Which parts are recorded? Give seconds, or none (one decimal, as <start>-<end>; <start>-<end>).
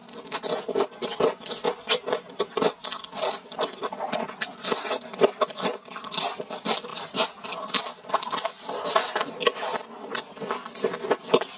0.0-11.6